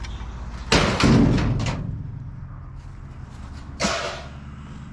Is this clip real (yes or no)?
yes